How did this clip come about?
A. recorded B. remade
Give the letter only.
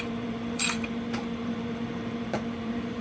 B